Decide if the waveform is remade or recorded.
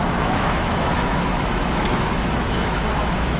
remade